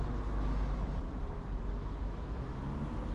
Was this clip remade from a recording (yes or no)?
yes